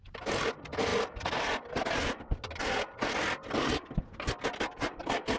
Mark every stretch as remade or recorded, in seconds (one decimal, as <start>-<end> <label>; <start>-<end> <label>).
0.0-5.4 recorded